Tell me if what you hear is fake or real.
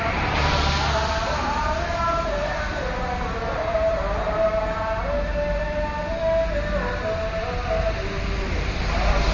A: real